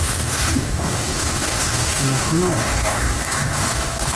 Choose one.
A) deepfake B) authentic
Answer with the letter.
A